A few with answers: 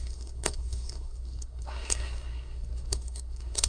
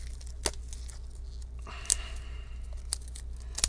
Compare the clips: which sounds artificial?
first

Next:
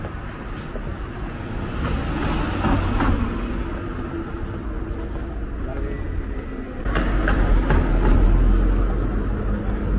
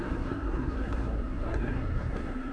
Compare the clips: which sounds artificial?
second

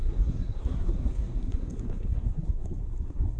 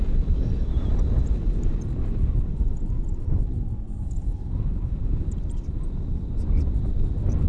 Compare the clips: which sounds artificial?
first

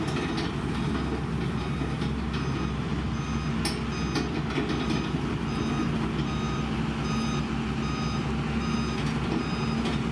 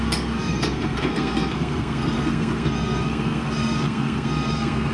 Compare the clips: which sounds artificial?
second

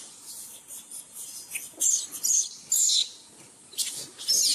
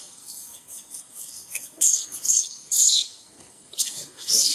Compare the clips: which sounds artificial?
second